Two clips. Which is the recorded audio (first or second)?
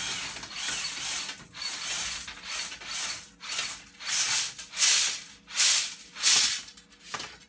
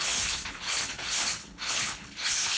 first